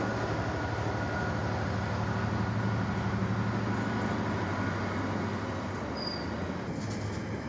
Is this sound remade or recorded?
recorded